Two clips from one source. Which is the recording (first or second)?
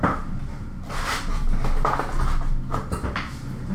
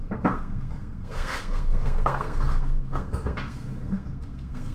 first